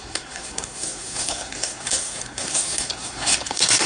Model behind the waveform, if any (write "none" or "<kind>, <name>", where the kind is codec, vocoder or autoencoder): codec, SNAC